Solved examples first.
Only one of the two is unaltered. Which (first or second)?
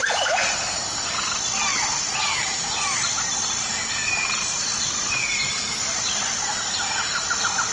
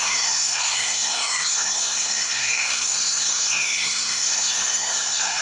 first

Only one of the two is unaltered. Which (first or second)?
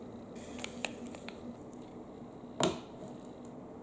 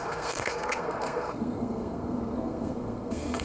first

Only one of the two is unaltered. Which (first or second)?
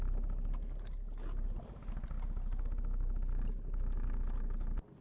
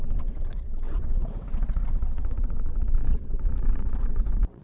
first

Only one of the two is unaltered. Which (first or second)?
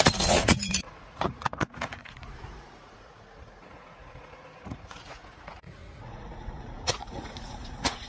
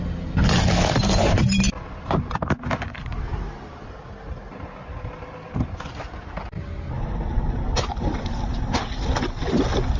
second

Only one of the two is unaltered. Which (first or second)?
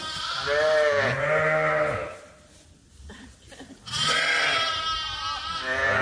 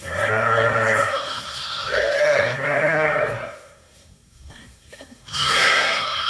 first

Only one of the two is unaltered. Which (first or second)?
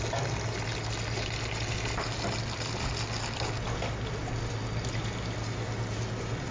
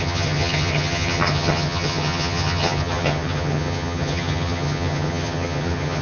first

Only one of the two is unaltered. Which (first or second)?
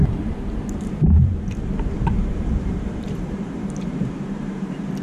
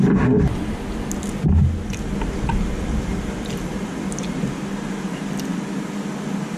second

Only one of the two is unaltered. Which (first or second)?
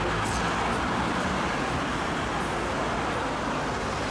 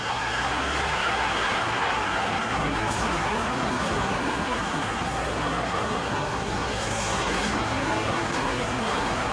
first